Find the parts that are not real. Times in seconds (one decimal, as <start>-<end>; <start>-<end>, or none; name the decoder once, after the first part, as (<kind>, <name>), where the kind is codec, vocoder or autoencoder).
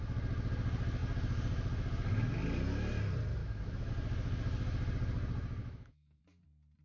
3.4-3.9 (autoencoder, DAC-VAE); 5.6-6.2